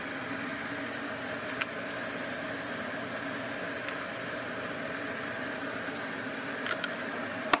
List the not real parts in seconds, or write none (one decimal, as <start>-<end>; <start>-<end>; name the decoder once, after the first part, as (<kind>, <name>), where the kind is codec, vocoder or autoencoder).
none